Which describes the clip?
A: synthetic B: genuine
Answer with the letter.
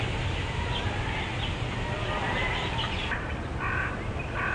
B